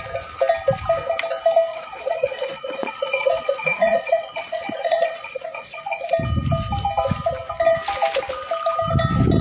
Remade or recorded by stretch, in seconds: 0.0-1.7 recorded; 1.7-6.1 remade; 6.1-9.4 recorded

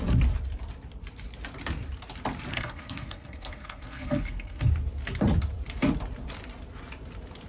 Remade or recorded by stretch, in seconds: 0.0-2.5 recorded; 2.5-4.7 remade; 4.7-7.5 recorded

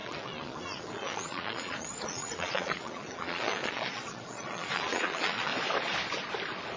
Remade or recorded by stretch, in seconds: 0.0-5.5 remade; 5.5-6.8 recorded

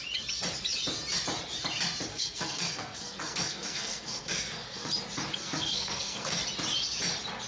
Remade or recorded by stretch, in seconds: 0.0-2.1 recorded; 2.1-4.9 remade; 4.9-5.4 recorded; 5.4-6.4 remade; 6.4-7.5 recorded